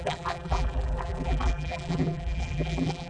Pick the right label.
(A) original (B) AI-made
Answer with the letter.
B